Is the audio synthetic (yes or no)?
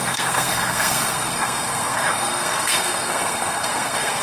yes